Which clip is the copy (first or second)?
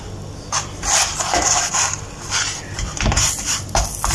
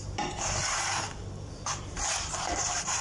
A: second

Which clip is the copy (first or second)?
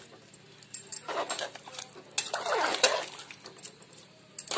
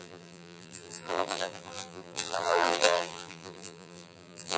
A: second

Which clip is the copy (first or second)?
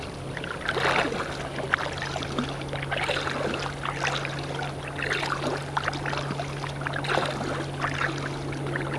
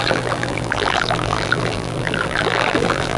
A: second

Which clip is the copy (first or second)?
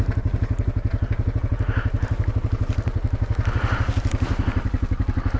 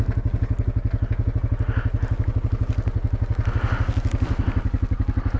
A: first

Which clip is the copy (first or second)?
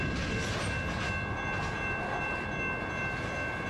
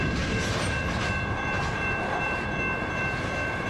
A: second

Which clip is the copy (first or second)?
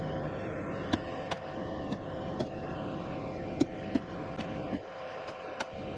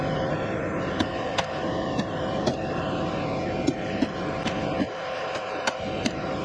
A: second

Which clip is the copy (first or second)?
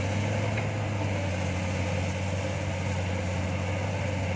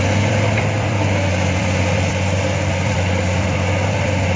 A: second